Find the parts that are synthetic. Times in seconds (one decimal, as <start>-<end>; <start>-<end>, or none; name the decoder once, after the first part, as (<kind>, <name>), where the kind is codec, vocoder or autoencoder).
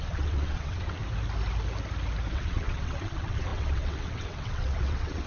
0.0-1.0 (vocoder, WaveNeXt); 2.3-5.3